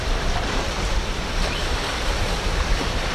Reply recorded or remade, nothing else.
remade